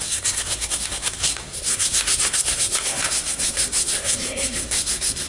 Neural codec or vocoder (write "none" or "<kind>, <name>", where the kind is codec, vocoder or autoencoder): codec, SNAC